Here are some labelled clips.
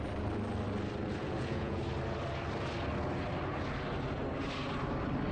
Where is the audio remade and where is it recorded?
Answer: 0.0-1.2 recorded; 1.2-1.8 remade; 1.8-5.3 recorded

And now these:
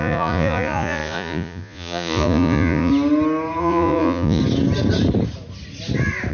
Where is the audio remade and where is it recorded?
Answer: 0.0-2.9 remade; 2.9-3.6 recorded; 3.6-4.4 remade; 4.4-6.3 recorded

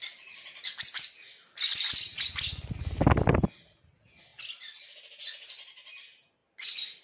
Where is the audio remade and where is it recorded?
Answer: 0.0-7.0 recorded

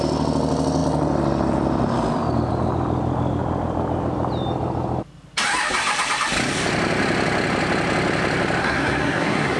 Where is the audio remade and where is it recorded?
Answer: 0.0-8.6 recorded; 8.6-9.6 remade

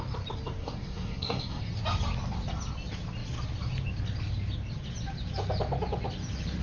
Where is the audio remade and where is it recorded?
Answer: 0.0-0.6 recorded; 0.6-1.6 remade; 1.6-6.6 recorded

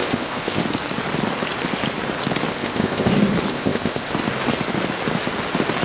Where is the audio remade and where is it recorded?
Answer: 0.0-0.6 remade; 0.6-2.5 recorded; 2.5-3.1 remade; 3.1-3.5 recorded; 3.5-4.1 remade; 4.1-5.8 recorded

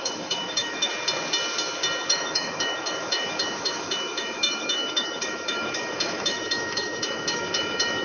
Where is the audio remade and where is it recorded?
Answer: 0.0-0.9 remade; 0.9-2.1 recorded; 2.1-8.0 remade

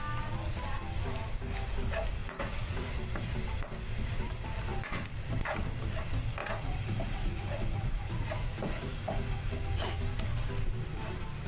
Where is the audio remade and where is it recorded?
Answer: 0.0-2.2 recorded; 2.2-2.9 remade; 2.9-6.4 recorded; 6.4-9.5 remade; 9.5-11.5 recorded